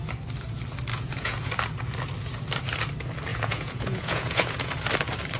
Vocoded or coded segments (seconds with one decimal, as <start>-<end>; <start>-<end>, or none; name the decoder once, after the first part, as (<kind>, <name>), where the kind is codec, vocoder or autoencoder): 0.9-1.5 (vocoder, Vocos); 3.3-4.7